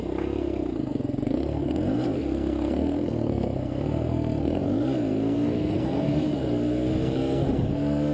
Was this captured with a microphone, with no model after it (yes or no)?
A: no